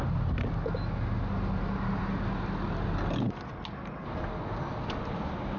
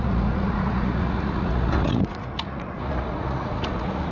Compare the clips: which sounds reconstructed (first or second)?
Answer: second